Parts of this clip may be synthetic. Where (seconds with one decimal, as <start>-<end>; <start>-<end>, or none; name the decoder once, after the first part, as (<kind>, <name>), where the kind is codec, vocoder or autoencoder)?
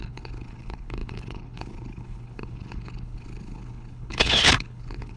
0.0-5.2 (codec, HILCodec)